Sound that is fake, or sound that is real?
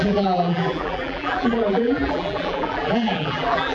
fake